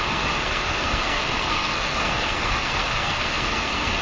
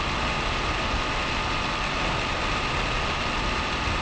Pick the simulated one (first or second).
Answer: first